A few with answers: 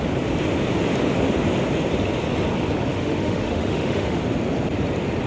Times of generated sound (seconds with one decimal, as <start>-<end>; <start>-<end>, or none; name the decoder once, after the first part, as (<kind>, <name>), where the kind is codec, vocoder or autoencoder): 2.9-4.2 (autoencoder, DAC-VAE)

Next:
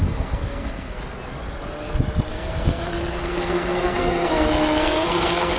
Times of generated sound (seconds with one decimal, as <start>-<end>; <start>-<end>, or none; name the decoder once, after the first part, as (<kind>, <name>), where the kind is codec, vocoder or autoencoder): 0.0-1.0 (codec, SNAC); 2.3-5.6

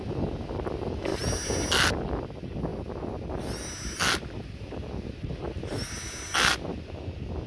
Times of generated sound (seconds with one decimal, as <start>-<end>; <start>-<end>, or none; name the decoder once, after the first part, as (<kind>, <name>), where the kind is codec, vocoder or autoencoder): none

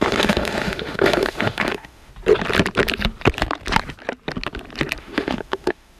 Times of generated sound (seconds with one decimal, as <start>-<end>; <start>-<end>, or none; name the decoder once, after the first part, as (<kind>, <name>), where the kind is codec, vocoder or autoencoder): 0.0-2.1 (autoencoder, DAC-VAE); 5.0-6.0

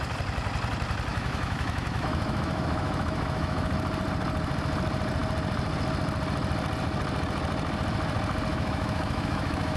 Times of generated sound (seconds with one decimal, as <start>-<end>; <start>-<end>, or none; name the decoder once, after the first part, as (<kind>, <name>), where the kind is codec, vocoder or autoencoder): 1.1-3.7 (autoencoder, DAC-VAE); 8.5-9.8

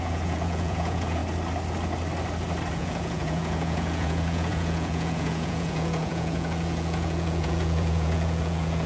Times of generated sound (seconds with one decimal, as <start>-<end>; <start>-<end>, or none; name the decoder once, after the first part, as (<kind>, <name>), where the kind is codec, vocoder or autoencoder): 0.0-1.2 (vocoder, Vocos); 2.7-8.9

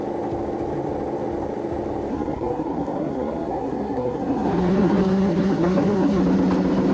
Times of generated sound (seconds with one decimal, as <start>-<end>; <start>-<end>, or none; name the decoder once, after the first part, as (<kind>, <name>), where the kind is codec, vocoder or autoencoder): 2.1-6.2 (codec, SNAC)

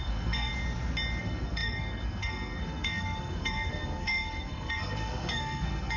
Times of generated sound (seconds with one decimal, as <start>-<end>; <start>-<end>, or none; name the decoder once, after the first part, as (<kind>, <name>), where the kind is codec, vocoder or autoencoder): 0.0-0.5 (codec, SNAC); 1.2-6.0